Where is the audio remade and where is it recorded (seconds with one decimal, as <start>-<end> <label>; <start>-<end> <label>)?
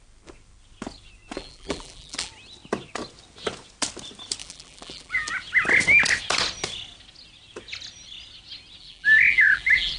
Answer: 0.0-1.4 recorded; 1.4-2.3 remade; 2.3-4.4 recorded; 4.4-5.3 remade; 5.3-8.8 recorded; 8.8-10.0 remade